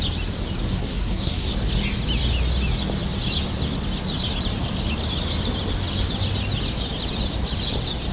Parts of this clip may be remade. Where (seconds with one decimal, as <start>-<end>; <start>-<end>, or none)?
0.7-1.5